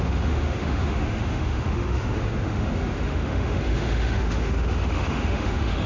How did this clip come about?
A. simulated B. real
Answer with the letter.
A